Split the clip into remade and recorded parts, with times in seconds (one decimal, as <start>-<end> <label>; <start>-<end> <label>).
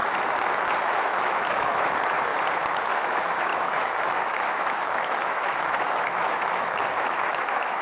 0.0-0.8 recorded; 0.8-2.3 remade; 2.3-2.8 recorded; 2.8-7.8 remade